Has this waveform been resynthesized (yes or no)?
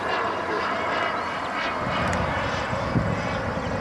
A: no